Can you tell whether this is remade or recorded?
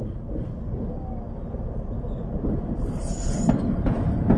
recorded